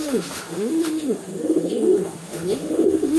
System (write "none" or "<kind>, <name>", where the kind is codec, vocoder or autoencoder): autoencoder, DAC-VAE